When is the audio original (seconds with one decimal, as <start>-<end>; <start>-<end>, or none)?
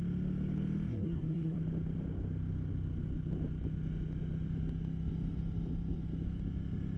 0.0-0.9; 1.6-7.0